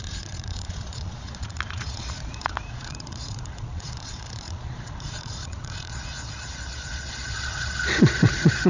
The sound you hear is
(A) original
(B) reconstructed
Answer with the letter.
B